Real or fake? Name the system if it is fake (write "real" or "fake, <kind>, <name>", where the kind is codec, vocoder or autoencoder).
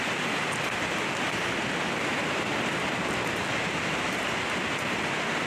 real